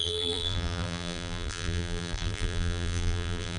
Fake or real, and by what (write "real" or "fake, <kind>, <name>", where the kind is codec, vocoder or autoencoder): fake, vocoder, BigVGAN v2